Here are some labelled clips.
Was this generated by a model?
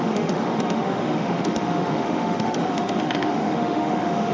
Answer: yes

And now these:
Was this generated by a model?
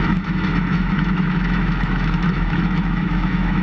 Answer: yes